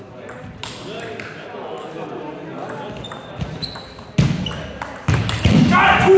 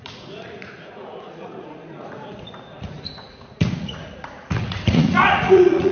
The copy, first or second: second